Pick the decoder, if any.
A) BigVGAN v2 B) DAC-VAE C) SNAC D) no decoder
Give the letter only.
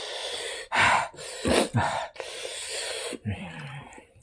D